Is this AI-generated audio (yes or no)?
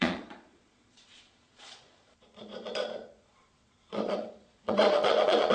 yes